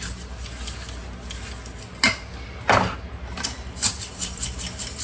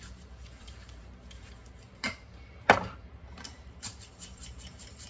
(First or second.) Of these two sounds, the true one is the first